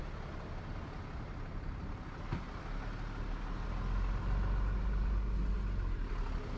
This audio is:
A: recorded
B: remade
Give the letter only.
A